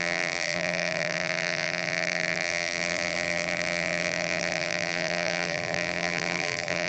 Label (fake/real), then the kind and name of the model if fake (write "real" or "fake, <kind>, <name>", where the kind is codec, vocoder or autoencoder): fake, vocoder, BigVGAN v2